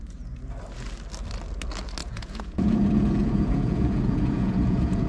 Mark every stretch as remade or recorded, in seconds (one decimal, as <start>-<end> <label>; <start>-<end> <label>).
0.0-2.0 recorded; 2.0-5.1 remade

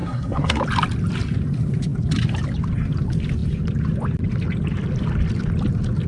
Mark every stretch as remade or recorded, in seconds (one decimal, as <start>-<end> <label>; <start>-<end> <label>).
0.0-0.6 remade; 0.6-6.1 recorded

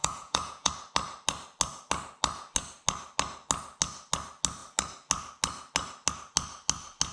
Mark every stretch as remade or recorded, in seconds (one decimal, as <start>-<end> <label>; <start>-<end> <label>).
0.0-0.7 remade; 0.7-7.1 recorded

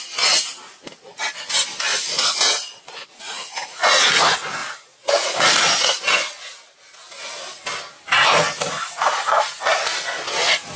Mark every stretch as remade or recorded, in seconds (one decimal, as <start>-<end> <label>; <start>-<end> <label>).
0.0-1.9 recorded; 1.9-4.1 remade; 4.1-4.6 recorded; 4.6-5.5 remade; 5.5-10.8 recorded

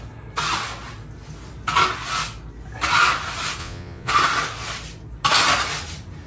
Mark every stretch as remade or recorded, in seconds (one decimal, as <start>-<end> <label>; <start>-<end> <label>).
0.0-3.6 recorded; 3.6-4.1 remade; 4.1-6.3 recorded

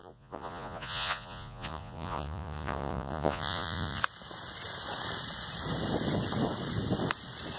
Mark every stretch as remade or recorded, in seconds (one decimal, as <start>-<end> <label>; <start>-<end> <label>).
0.0-4.0 remade; 4.0-7.6 recorded